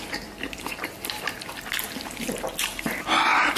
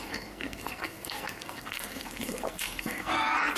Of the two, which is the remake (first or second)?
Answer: second